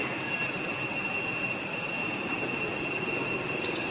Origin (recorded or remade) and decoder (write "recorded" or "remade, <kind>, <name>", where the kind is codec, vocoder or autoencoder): recorded